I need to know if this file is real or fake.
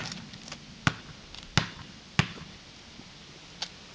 real